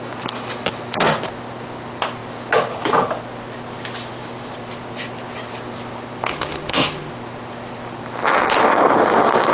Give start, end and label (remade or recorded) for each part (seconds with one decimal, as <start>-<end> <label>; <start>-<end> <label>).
0.0-6.3 recorded; 6.3-7.1 remade; 7.1-9.5 recorded